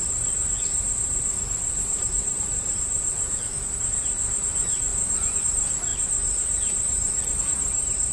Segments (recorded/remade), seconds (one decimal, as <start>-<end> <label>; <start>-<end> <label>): 0.0-3.1 recorded; 3.1-3.6 remade; 3.6-4.9 recorded; 4.9-5.4 remade; 5.4-8.1 recorded

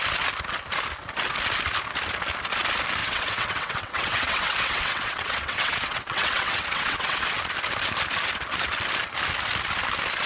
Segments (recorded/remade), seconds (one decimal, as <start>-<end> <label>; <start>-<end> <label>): 0.0-3.0 recorded; 3.0-7.2 remade; 7.2-10.3 recorded